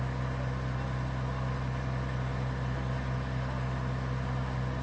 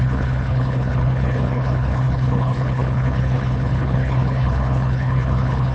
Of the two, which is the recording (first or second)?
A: first